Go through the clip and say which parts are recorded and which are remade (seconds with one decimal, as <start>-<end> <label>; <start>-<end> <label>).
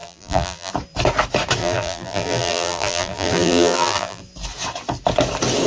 0.0-0.7 remade; 0.7-1.6 recorded; 1.6-4.2 remade; 4.2-5.7 recorded